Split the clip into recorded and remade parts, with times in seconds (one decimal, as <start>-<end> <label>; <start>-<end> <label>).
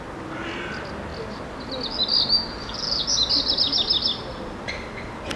0.0-5.4 recorded